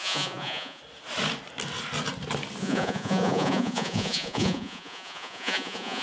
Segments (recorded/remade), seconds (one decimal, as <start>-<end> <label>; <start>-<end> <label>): 0.0-0.8 remade; 0.8-2.6 recorded; 2.6-6.0 remade